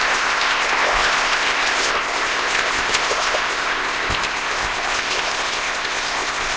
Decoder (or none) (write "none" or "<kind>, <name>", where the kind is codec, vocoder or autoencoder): codec, ZipCodec